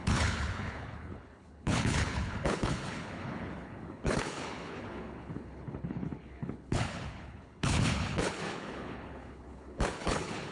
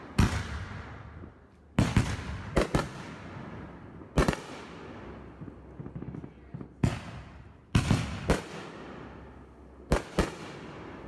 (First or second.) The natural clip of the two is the second